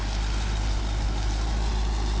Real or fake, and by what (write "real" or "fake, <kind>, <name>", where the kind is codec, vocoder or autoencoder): real